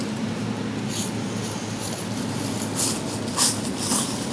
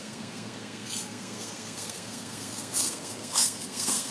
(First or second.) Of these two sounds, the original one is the first